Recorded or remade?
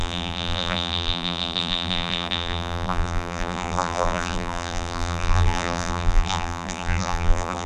remade